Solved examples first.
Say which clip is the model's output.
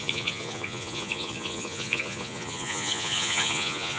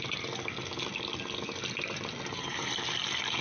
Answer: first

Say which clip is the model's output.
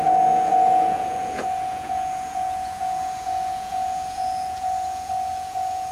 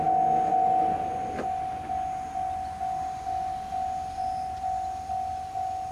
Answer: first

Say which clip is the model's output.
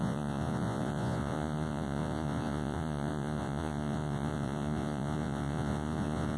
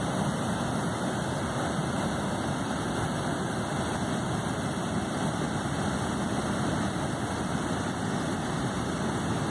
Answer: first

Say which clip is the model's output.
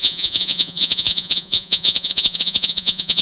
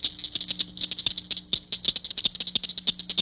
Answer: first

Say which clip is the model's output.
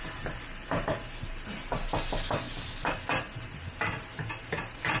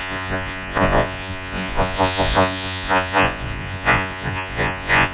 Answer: second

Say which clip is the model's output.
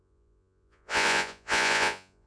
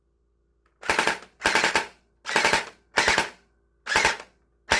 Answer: first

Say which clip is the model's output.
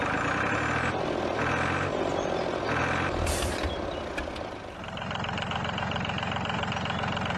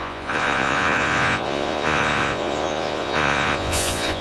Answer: second